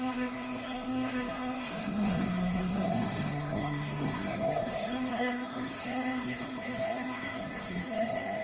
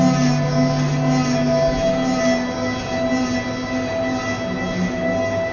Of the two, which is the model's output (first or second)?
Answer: first